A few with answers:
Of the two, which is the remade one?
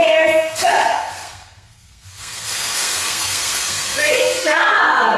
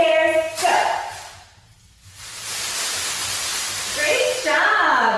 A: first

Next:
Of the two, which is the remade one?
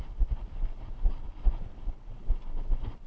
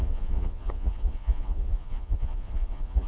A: second